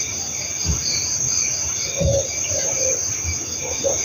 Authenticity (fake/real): real